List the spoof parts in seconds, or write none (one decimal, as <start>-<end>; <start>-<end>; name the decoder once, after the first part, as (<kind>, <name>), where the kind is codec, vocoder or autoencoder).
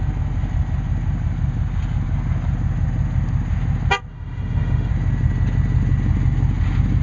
4.1-4.9 (autoencoder, DAC-VAE)